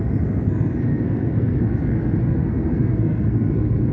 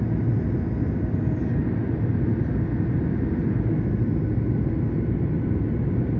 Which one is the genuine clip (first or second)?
second